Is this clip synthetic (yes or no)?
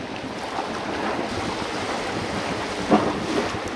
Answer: no